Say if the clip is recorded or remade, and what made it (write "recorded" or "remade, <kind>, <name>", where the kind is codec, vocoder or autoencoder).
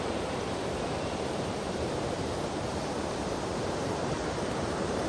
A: remade, vocoder, BigVGAN v2